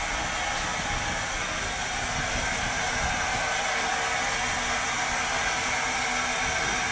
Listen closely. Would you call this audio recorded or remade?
recorded